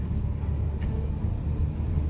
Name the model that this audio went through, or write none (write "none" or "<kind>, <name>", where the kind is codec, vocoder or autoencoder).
none